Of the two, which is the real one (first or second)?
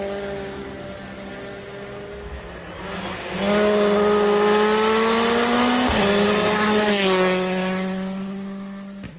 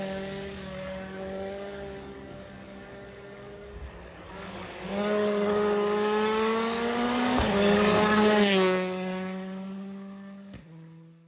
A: first